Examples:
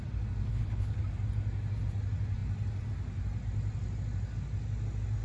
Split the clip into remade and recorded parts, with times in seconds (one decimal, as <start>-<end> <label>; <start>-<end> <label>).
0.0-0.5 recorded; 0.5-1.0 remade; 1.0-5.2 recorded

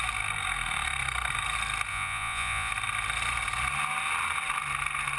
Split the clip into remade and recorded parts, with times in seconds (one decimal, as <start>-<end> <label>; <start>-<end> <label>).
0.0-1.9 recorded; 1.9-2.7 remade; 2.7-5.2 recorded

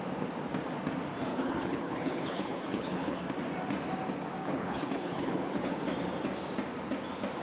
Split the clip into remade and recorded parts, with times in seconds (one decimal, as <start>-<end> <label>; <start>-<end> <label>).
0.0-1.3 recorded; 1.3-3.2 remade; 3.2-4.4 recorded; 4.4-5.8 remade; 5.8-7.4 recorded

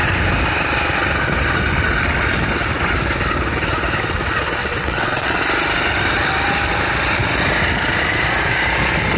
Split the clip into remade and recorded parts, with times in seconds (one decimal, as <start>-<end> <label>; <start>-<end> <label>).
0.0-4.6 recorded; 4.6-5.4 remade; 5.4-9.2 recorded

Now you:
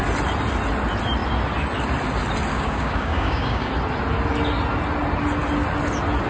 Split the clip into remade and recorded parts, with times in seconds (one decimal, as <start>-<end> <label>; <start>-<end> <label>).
0.0-2.5 recorded; 2.5-3.7 remade; 3.7-6.3 recorded